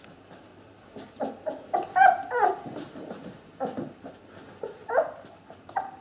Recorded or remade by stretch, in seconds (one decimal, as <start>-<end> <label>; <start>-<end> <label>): 0.0-0.5 recorded; 0.5-4.1 remade; 4.1-4.8 recorded; 4.8-5.3 remade; 5.3-6.0 recorded